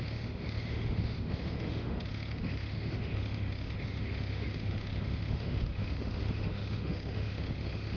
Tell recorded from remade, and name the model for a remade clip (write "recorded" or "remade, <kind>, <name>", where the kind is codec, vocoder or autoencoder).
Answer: remade, autoencoder, DAC-VAE